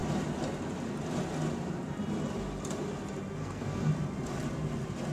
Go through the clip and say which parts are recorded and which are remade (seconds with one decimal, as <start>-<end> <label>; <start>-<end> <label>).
0.0-3.4 recorded; 3.4-3.9 remade; 3.9-5.1 recorded